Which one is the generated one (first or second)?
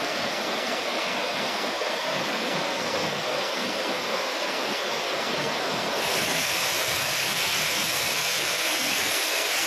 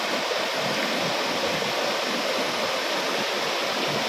first